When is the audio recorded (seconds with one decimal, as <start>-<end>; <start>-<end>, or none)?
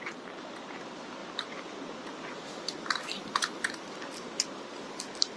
0.0-5.4